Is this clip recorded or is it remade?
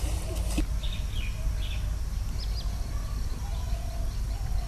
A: recorded